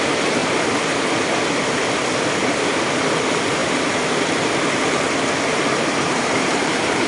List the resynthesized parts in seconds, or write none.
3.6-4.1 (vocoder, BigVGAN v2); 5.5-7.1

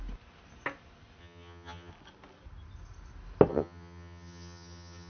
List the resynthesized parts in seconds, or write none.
1.2-1.9 (vocoder, HiFi-GAN); 3.5-5.1

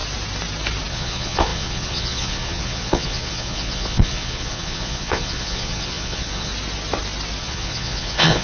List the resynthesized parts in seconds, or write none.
0.9-6.5 (vocoder, Vocos); 7.4-8.4

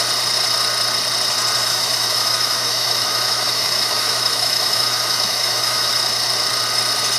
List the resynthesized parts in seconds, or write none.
1.6-5.9 (autoencoder, DAC-VAE)

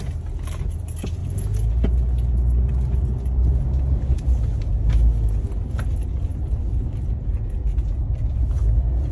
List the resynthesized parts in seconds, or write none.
none

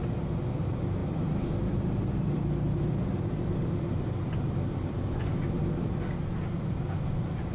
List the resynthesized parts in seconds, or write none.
1.0-5.5 (vocoder, BigVGAN v2)

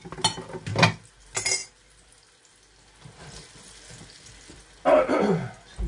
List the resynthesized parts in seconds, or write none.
none

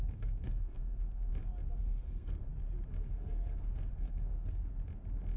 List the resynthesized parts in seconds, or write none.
0.0-1.3 (codec, SNAC); 1.8-2.5; 3.1-4.6